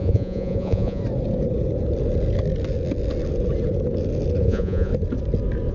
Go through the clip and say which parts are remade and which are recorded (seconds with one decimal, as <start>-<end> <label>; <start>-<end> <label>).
0.0-1.0 remade; 1.0-4.4 recorded; 4.4-4.9 remade; 4.9-5.7 recorded

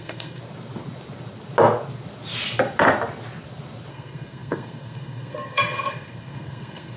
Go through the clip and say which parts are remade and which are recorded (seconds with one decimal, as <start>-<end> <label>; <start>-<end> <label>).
0.0-0.4 remade; 0.4-3.9 recorded; 3.9-7.0 remade

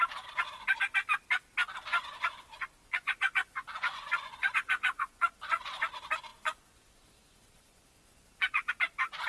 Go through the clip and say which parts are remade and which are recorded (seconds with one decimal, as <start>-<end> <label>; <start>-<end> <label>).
0.0-1.9 recorded; 1.9-5.8 remade; 5.8-6.3 recorded; 6.3-8.7 remade; 8.7-9.3 recorded

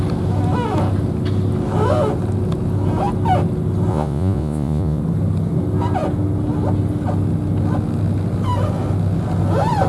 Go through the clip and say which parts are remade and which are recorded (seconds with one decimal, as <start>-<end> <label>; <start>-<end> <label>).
0.0-3.9 recorded; 3.9-5.0 remade; 5.0-9.9 recorded

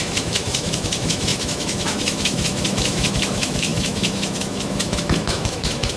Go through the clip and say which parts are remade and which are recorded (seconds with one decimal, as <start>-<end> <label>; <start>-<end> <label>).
0.0-6.0 remade

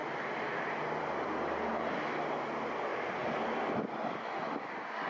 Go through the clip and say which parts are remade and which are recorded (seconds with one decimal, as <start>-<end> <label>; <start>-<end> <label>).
0.0-5.1 recorded